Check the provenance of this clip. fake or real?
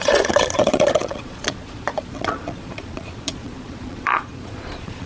fake